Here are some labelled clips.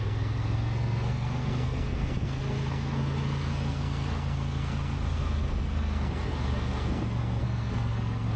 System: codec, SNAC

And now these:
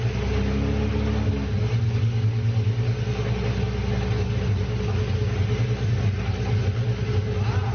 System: none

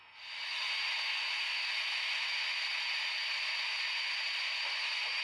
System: none